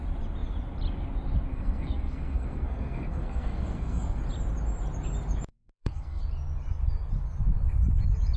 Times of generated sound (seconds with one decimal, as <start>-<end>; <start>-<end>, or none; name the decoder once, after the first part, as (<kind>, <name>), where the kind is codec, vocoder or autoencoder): 1.5-4.2 (codec, SNAC); 5.5-6.2